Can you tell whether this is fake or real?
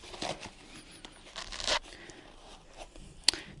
real